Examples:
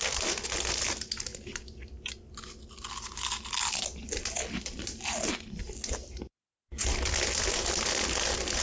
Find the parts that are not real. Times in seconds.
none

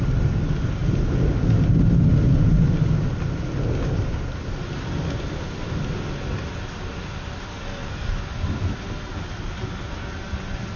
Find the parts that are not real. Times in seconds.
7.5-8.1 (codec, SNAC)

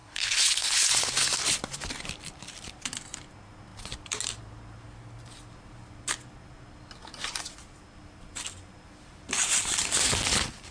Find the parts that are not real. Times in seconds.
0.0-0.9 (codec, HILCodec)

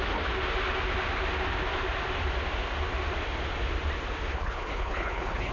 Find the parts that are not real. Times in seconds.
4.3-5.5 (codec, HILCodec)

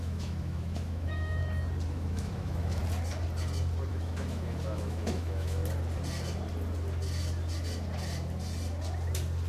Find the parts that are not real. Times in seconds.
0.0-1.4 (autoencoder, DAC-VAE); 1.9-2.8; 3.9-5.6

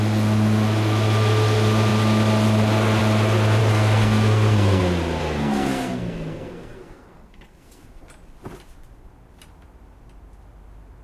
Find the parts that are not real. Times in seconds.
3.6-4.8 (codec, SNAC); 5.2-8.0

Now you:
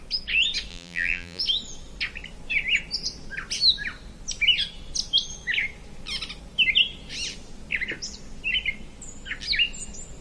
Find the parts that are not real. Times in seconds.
0.7-1.4 (vocoder, BigVGAN v2)